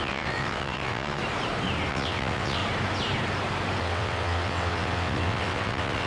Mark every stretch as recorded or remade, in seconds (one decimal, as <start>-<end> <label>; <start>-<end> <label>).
0.0-1.2 remade; 1.2-1.9 recorded; 1.9-2.6 remade; 2.6-3.8 recorded; 3.8-6.1 remade